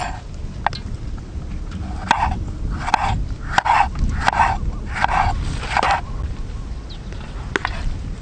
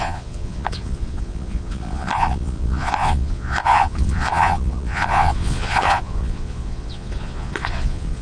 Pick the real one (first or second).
first